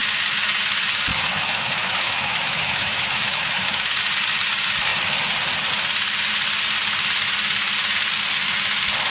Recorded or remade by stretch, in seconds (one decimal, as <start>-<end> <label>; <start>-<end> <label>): 0.0-1.1 recorded; 1.1-4.0 remade; 4.0-9.1 recorded